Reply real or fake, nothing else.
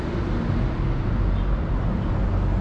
real